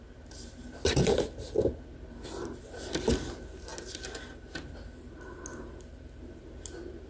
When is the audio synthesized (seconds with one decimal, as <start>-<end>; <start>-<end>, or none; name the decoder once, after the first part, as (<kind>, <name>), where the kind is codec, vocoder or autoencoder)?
none